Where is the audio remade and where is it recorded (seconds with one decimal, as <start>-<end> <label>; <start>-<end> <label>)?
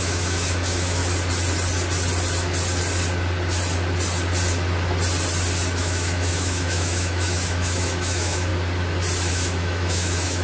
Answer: 0.0-1.0 remade; 1.0-5.8 recorded; 5.8-8.5 remade; 8.5-9.3 recorded; 9.3-10.4 remade